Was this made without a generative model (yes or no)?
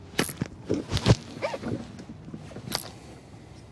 yes